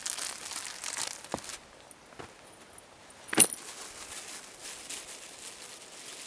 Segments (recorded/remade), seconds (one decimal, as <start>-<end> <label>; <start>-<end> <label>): 0.0-6.3 recorded